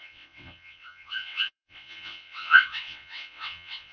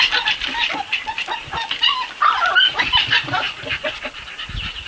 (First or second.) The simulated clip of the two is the first